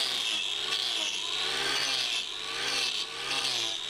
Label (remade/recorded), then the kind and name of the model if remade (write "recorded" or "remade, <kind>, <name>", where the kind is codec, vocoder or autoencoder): recorded